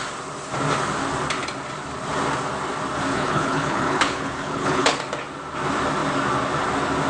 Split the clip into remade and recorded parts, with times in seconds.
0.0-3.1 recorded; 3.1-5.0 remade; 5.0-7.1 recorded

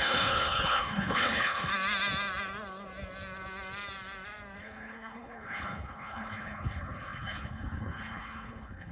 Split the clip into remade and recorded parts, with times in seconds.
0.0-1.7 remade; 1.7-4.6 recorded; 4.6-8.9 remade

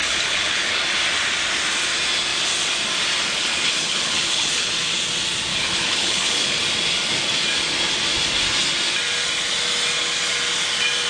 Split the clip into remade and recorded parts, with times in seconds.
0.0-0.8 remade; 0.8-3.4 recorded; 3.4-4.7 remade; 4.7-5.5 recorded; 5.5-6.6 remade; 6.6-11.1 recorded